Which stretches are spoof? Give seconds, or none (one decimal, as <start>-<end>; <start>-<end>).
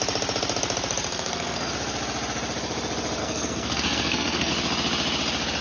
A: 1.1-1.7; 3.2-4.5